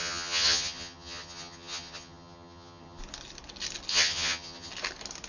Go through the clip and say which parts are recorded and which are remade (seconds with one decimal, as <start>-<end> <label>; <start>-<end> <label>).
0.0-3.0 remade; 3.0-3.9 recorded; 3.9-4.7 remade; 4.7-5.3 recorded